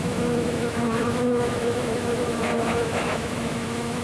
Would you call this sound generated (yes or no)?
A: yes